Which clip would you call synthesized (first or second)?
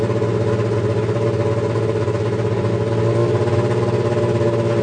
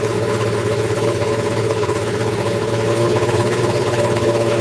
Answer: second